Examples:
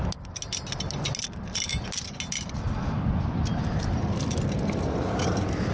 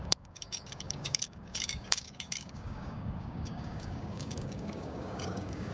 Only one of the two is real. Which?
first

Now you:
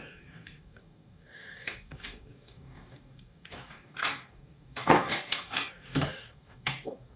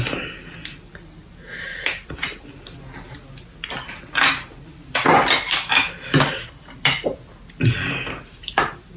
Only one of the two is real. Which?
second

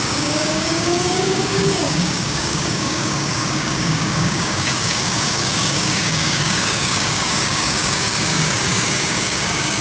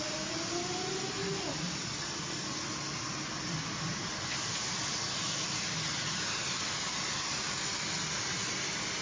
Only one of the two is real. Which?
second